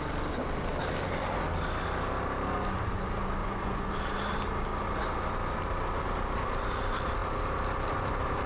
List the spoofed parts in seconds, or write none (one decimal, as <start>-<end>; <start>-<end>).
3.4-3.9